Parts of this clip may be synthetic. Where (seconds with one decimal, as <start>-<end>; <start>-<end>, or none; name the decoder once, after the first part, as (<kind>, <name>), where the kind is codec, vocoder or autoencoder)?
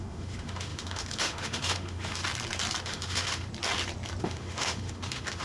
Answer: 0.0-2.2 (autoencoder, DAC-VAE); 2.8-3.5; 4.2-5.4